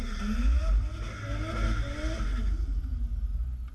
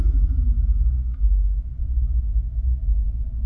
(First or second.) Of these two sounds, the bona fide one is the first